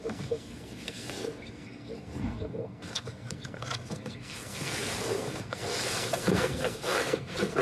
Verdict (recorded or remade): remade